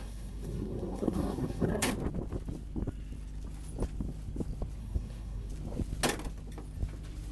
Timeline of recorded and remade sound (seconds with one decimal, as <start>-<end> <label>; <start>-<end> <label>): 0.0-1.9 remade; 1.9-4.8 recorded; 4.8-5.5 remade; 5.5-7.3 recorded